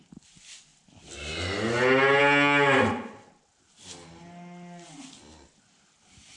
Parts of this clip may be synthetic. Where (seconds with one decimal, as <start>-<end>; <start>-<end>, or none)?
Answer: none